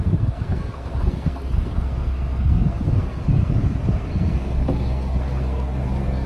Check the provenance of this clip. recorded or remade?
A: remade